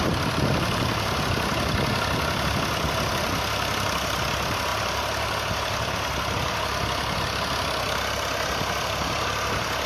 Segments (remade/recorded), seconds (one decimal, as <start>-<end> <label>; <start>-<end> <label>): 0.0-9.9 recorded